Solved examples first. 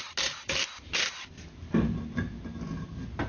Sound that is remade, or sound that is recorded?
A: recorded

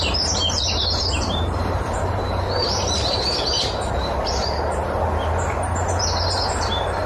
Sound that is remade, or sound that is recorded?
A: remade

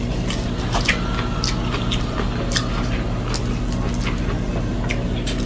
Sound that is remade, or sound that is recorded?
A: recorded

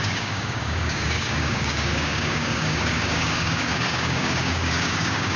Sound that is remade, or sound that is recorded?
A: remade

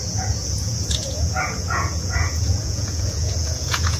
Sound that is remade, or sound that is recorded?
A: remade